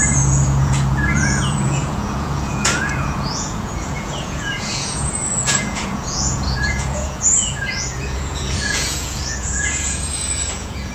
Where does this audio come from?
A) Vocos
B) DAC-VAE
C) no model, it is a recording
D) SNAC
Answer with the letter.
A